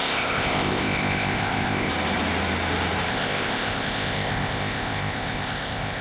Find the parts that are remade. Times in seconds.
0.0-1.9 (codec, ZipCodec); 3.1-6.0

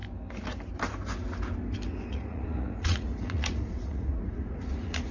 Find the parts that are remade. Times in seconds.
2.1-5.1 (vocoder, Vocos)

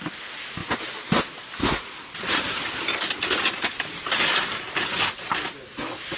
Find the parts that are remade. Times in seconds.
none